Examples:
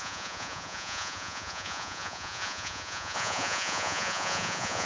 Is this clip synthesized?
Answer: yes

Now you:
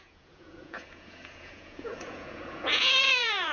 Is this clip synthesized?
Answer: yes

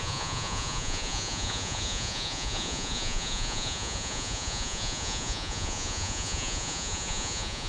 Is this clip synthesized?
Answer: yes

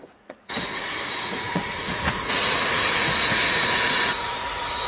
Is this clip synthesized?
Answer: yes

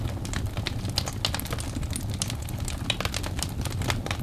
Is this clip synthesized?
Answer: no